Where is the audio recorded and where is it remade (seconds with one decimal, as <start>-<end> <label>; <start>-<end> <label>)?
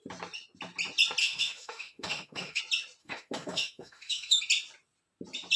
0.0-1.2 recorded; 1.2-2.6 remade; 2.6-3.0 recorded; 3.0-4.4 remade; 4.4-5.6 recorded